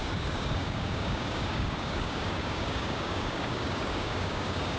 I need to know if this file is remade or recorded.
remade